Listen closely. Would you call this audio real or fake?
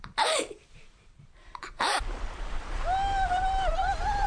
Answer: fake